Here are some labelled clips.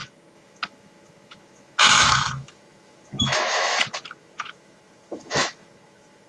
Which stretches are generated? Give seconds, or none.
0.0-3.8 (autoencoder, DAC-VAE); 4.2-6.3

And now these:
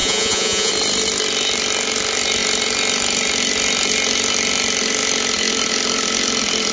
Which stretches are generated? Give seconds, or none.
0.0-0.7 (vocoder, Vocos)

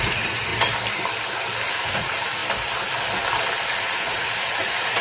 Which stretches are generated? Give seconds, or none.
0.0-0.5 (vocoder, Vocos); 1.7-2.4; 3.8-5.0

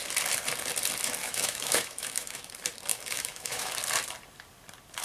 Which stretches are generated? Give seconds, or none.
1.2-2.5 (autoencoder, DAC-VAE); 2.9-3.7

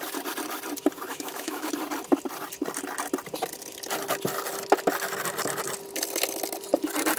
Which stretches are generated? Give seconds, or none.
1.1-1.7 (autoencoder, DAC-VAE)